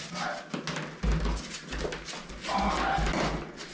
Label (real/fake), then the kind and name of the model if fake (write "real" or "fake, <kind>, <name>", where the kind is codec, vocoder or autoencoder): real